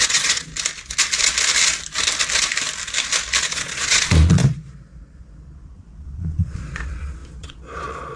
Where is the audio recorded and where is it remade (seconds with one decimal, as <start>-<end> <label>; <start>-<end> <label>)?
0.0-0.5 remade; 0.5-3.4 recorded; 3.4-8.2 remade